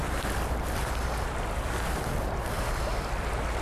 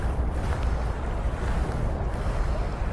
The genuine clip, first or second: first